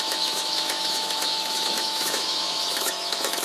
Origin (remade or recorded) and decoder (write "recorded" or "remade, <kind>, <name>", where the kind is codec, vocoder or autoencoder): remade, autoencoder, DAC-VAE